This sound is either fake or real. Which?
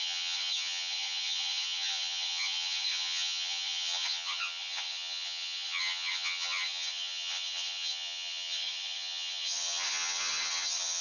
fake